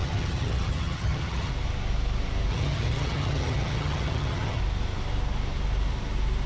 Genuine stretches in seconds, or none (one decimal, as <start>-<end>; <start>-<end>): 1.5-2.5; 4.6-6.5

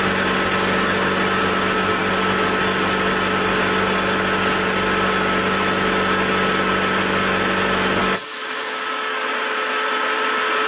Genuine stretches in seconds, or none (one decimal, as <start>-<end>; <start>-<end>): 0.0-8.0; 9.3-10.7

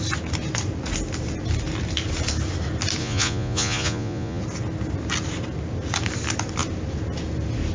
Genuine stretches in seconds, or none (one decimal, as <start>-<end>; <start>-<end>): 0.0-3.0; 4.4-7.7